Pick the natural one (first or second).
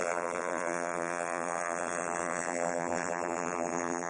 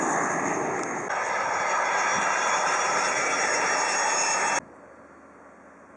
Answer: second